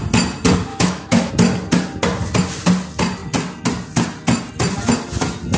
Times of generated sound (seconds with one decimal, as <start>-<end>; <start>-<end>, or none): 0.7-1.3